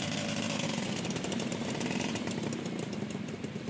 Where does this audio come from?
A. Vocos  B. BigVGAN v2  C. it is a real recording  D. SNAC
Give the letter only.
B